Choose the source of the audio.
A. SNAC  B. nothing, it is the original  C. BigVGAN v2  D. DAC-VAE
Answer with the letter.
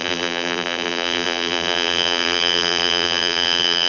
C